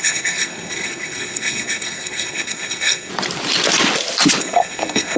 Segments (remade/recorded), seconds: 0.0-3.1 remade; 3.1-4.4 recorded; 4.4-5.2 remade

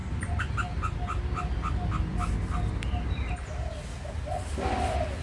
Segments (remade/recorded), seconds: 0.0-0.5 remade; 0.5-5.2 recorded

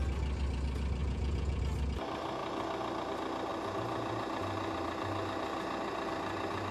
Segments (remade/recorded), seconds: 0.0-1.0 recorded; 1.0-1.6 remade; 1.6-6.7 recorded

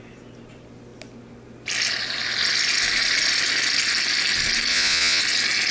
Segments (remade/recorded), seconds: 0.0-4.7 recorded; 4.7-5.2 remade; 5.2-5.7 recorded

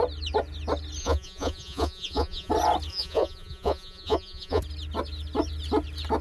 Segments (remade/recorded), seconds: 0.0-1.0 recorded; 1.0-2.5 remade; 2.5-2.9 recorded; 2.9-4.6 remade; 4.6-6.2 recorded